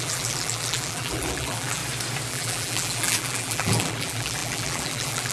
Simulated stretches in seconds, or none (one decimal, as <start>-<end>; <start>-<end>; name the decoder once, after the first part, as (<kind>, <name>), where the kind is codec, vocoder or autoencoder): 0.0-1.8 (vocoder, BigVGAN v2); 2.3-5.3